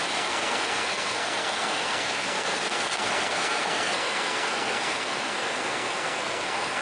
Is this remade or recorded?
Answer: remade